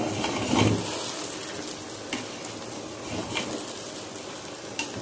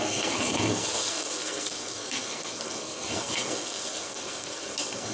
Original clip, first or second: first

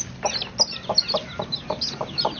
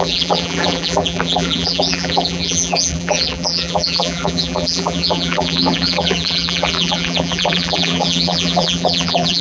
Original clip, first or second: first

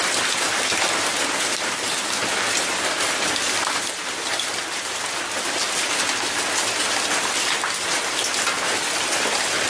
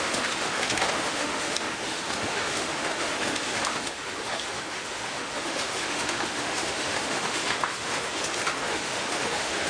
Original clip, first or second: first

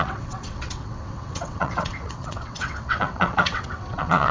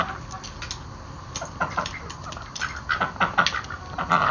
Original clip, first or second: second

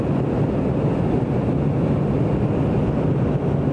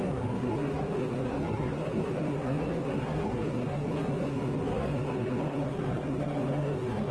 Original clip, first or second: first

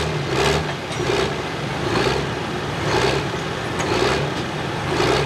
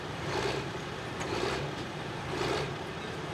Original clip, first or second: first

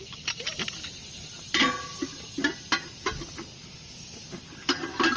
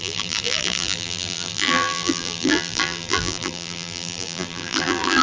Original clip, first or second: first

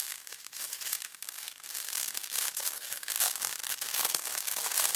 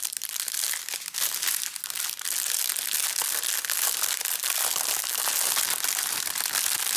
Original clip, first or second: second